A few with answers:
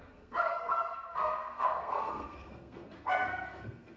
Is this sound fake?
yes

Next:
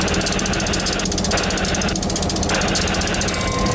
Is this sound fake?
no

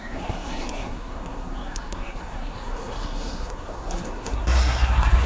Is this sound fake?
yes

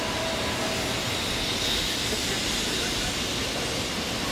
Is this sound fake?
no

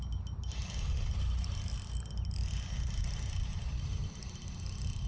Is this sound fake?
no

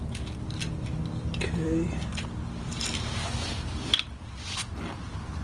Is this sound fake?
no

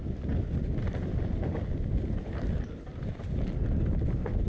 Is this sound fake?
no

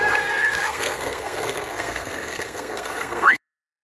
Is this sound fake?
yes